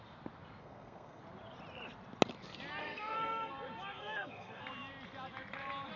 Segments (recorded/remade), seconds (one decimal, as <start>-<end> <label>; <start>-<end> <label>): 0.0-0.6 recorded; 0.6-1.2 remade; 1.2-2.8 recorded; 2.8-3.5 remade; 3.5-4.0 recorded; 4.0-4.6 remade; 4.6-6.0 recorded